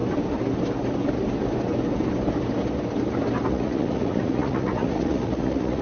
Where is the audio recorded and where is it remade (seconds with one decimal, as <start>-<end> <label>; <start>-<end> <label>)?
0.0-3.5 recorded; 3.5-5.8 remade